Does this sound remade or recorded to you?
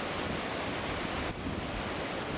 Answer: recorded